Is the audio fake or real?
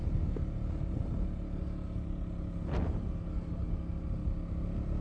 real